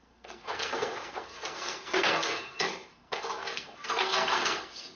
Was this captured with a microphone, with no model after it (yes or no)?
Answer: no